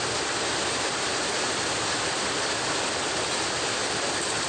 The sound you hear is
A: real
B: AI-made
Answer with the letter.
A